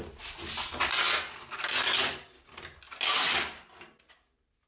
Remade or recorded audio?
recorded